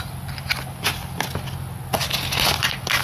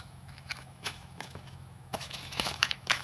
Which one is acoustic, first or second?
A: first